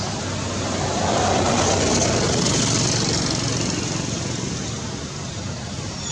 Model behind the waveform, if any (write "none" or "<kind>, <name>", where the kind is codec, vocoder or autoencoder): none